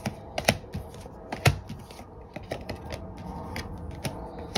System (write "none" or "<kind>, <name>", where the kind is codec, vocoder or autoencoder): none